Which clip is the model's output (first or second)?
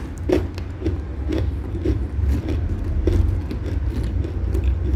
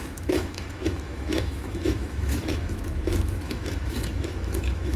second